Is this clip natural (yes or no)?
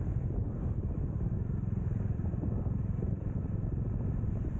no